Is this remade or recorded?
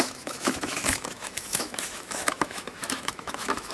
remade